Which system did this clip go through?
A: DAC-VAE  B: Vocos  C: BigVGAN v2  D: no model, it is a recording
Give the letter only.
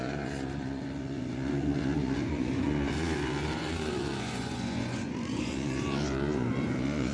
B